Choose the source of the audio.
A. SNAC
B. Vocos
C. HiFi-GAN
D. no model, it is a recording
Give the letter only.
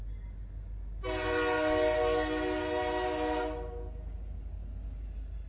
D